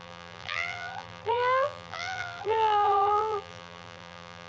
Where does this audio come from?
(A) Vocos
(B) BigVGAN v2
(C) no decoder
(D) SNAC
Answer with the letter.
B